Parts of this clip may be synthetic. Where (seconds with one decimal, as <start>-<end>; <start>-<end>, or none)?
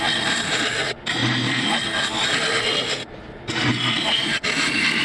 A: none